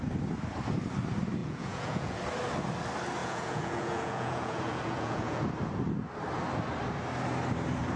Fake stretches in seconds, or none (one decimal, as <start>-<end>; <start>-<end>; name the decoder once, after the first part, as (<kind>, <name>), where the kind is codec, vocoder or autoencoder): 1.4-2.2 (vocoder, Vocos); 3.2-5.4